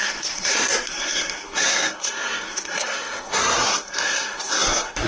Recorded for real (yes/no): no